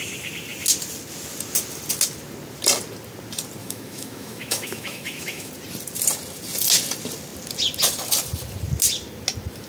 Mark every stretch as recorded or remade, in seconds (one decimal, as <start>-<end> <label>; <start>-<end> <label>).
0.0-3.6 recorded; 3.6-5.5 remade; 5.5-9.7 recorded